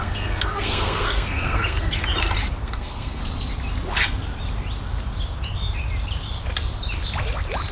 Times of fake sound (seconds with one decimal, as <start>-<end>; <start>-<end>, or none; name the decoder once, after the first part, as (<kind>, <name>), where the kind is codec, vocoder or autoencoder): 0.0-2.0 (codec, SNAC); 2.6-3.2